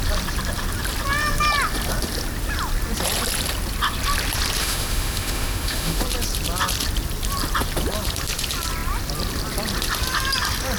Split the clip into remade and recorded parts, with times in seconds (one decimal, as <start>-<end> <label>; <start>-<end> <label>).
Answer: 0.0-4.6 recorded; 4.6-6.0 remade; 6.0-10.8 recorded